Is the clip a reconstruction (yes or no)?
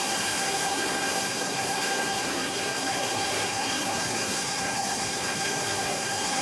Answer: yes